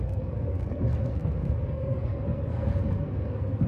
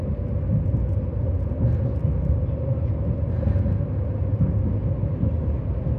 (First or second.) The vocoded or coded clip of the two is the first